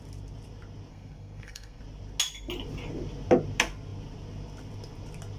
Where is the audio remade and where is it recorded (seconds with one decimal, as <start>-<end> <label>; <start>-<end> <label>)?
0.0-0.9 recorded; 0.9-1.8 remade; 1.8-5.4 recorded